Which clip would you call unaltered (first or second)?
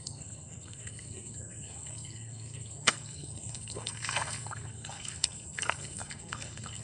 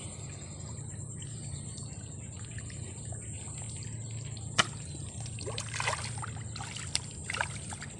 second